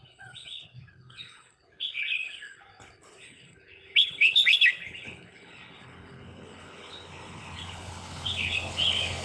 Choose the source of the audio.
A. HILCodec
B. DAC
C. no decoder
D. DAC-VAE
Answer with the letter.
A